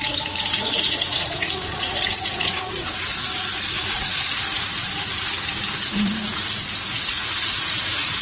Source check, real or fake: fake